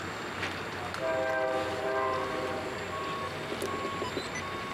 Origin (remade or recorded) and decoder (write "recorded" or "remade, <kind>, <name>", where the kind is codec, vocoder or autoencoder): recorded